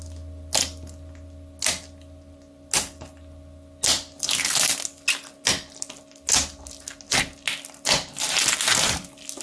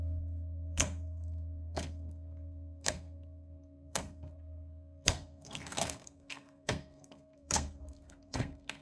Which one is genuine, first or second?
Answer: first